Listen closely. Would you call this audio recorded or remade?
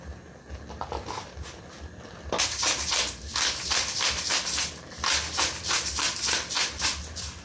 recorded